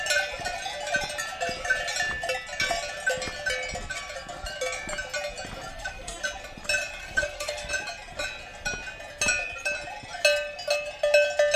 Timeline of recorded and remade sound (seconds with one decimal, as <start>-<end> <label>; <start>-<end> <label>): 0.0-5.7 recorded; 5.7-6.2 remade; 6.2-7.0 recorded; 7.0-7.7 remade; 7.7-11.6 recorded